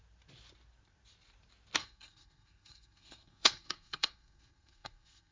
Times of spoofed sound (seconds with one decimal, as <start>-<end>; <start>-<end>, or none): 1.8-5.3